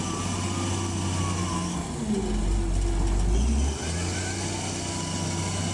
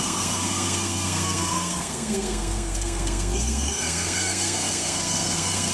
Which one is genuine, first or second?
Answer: first